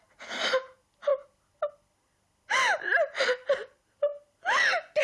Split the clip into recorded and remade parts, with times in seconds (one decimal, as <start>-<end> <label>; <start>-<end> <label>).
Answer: 0.0-5.0 recorded